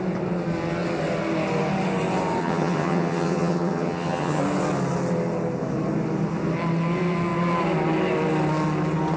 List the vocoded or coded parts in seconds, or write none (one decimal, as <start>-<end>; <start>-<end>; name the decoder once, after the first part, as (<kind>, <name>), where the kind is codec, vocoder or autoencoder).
2.4-4.4 (vocoder, HiFi-GAN)